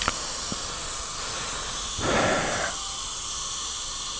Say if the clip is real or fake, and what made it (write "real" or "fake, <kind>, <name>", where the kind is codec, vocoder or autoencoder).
real